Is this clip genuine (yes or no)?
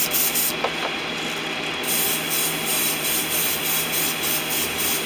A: yes